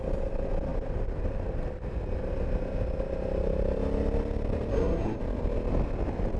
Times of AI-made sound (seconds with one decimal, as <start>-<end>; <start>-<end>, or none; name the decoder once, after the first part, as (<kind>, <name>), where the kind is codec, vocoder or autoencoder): 4.7-5.2 (codec, SNAC)